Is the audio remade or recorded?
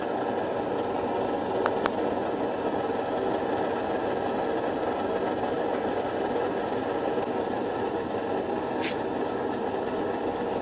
recorded